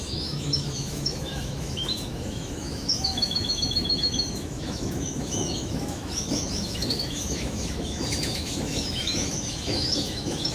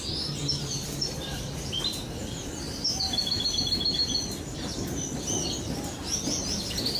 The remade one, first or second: first